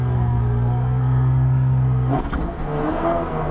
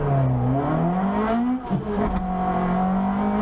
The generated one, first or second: first